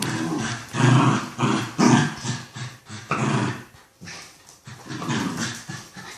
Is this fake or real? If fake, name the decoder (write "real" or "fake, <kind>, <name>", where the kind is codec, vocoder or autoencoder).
real